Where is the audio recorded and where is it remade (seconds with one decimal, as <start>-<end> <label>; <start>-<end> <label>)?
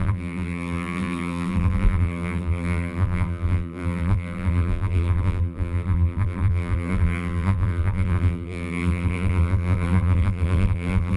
0.0-11.2 remade